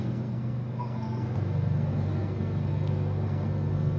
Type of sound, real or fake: fake